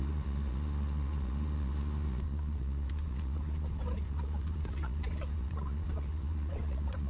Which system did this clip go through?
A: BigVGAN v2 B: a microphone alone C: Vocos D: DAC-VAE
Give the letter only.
C